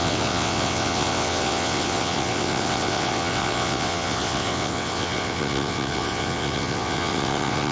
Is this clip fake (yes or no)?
yes